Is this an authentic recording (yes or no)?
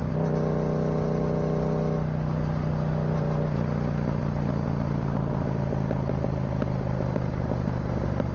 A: yes